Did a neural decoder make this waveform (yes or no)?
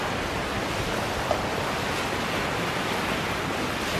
no